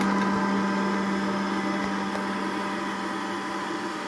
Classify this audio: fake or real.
real